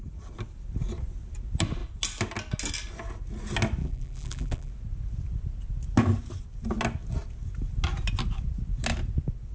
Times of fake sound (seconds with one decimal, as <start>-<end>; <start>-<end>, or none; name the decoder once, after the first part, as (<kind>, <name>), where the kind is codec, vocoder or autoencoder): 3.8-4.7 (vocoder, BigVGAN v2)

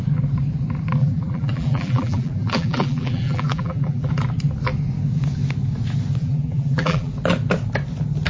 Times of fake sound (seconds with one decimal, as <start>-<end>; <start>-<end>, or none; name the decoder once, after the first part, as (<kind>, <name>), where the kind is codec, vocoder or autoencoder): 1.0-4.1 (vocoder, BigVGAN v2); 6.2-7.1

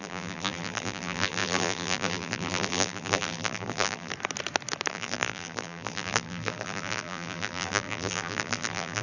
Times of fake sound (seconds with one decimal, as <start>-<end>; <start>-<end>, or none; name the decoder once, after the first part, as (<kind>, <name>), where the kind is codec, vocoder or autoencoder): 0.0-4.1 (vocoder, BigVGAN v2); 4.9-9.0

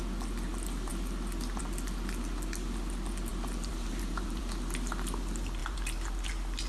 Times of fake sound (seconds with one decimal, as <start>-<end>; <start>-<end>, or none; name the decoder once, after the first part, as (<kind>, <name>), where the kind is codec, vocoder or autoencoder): 3.3-4.4 (vocoder, BigVGAN v2); 5.6-6.3

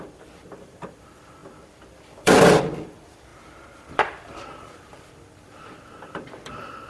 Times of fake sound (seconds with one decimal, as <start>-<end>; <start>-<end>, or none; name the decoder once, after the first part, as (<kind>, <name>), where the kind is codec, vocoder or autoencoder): 0.0-6.9 (vocoder, BigVGAN v2)